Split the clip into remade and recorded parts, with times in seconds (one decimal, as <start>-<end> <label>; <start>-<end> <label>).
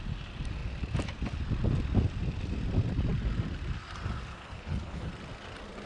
0.0-4.3 recorded; 4.3-5.1 remade; 5.1-5.9 recorded